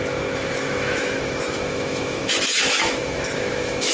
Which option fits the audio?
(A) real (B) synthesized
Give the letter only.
B